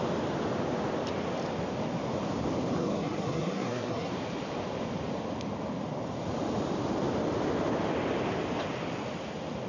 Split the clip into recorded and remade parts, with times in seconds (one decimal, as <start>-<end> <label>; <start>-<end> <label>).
0.0-2.8 recorded; 2.8-4.1 remade; 4.1-9.7 recorded